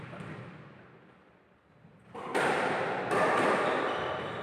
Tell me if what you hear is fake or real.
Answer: real